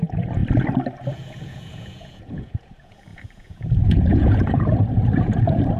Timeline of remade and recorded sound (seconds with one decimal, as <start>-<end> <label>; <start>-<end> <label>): 0.0-0.4 remade; 0.4-1.1 recorded; 1.1-5.8 remade